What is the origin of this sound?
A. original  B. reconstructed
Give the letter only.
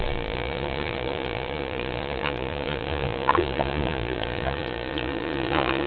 B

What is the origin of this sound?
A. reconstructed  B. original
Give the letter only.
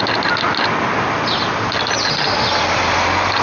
B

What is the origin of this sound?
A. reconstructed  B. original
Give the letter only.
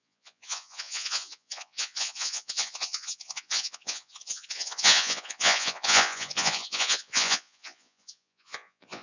A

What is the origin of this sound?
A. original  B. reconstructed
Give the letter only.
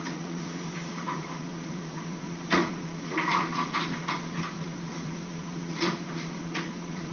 B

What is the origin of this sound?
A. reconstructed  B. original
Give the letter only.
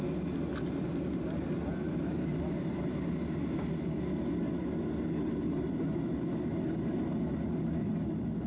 B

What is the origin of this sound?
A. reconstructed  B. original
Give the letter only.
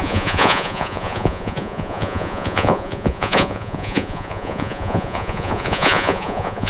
A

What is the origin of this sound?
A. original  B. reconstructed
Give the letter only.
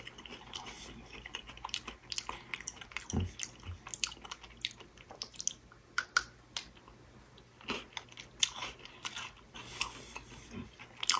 A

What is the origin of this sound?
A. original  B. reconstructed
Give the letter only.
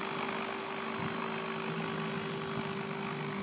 A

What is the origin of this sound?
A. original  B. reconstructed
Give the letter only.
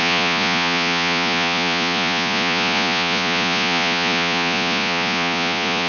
B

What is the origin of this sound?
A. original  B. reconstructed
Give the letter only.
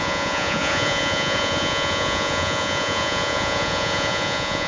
B